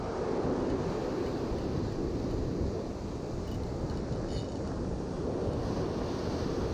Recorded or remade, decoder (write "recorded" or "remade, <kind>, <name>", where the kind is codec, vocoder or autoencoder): recorded